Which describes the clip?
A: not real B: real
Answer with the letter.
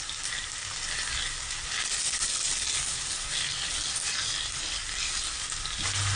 B